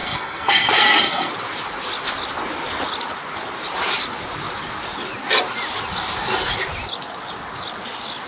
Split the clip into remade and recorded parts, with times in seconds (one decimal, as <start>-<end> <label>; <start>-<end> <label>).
0.0-1.3 remade; 1.3-8.3 recorded